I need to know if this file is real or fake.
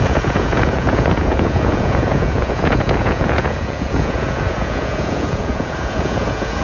fake